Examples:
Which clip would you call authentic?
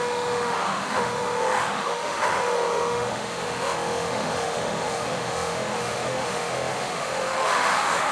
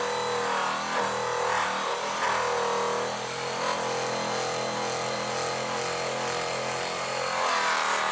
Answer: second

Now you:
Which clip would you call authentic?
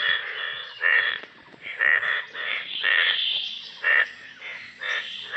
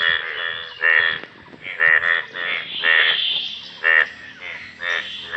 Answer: second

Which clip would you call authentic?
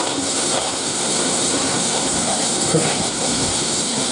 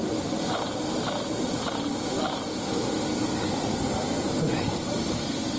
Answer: second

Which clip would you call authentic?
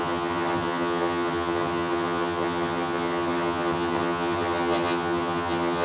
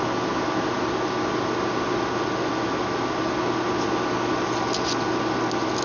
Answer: second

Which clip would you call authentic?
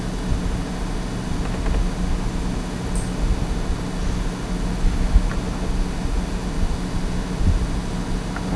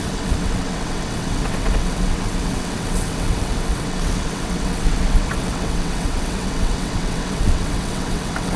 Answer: first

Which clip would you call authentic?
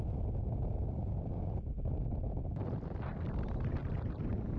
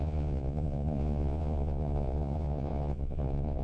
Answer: first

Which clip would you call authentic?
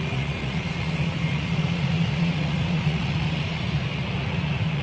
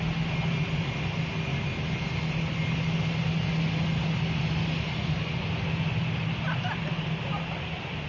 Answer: second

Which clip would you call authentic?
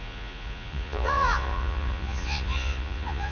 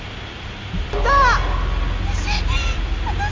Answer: second